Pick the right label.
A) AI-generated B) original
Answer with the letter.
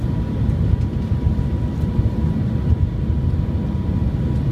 B